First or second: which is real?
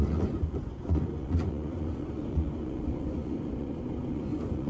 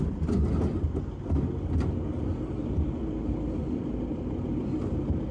second